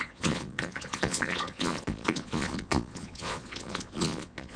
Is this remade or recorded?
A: remade